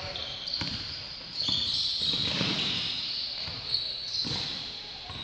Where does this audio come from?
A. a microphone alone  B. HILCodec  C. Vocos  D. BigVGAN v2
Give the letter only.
A